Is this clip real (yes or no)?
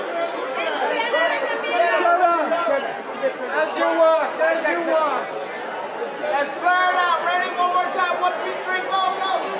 yes